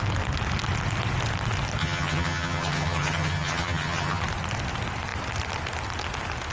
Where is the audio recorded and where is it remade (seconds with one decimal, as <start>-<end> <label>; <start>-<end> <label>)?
0.0-1.8 recorded; 1.8-4.2 remade; 4.2-6.5 recorded